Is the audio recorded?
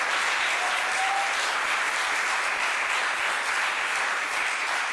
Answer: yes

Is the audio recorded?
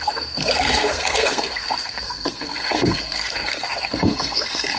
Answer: no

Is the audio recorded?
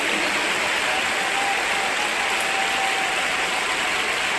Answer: yes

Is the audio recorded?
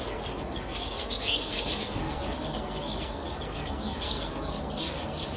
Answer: no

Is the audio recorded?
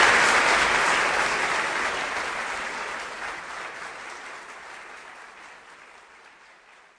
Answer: yes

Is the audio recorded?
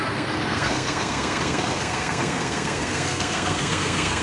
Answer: no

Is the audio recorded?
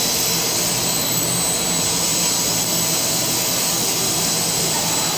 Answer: yes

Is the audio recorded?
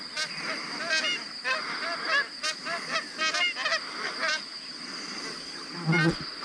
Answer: yes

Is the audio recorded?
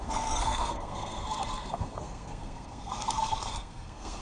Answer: no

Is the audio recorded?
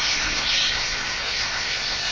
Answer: no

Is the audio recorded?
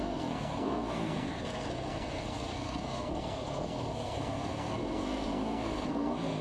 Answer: no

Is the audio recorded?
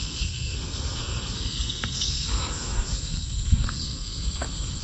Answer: no